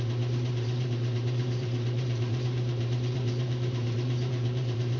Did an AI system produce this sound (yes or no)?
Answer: yes